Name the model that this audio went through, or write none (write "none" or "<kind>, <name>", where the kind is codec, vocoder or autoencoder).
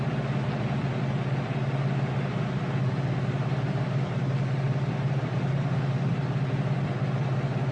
none